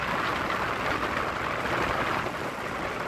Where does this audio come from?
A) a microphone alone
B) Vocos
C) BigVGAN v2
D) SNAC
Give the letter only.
A